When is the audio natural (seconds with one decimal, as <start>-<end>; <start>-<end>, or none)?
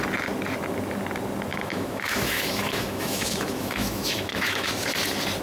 0.0-1.5; 4.7-5.4